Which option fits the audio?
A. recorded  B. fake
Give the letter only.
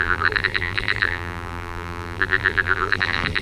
B